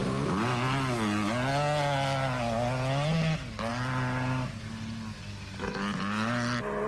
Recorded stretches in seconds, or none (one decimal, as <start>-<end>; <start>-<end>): 0.0-6.9